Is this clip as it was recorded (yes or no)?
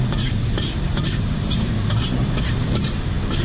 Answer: no